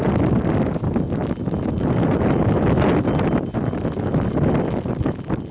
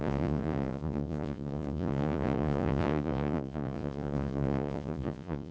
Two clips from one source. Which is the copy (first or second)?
second